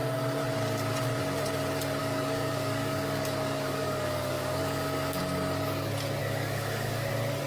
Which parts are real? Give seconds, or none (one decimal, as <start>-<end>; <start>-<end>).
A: 0.0-2.0; 5.2-6.2; 7.1-7.5